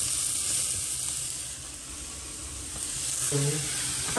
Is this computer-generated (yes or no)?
no